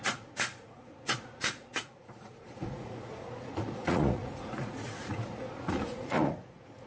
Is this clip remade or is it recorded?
remade